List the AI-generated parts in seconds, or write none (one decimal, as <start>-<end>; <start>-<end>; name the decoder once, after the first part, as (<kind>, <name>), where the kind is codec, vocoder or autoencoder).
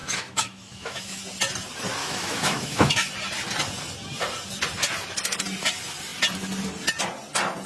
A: 0.0-1.2 (autoencoder, DAC-VAE); 2.0-3.1